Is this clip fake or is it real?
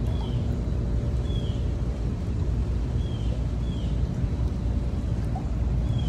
real